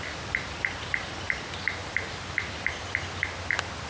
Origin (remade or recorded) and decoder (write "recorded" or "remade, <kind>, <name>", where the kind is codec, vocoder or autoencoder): recorded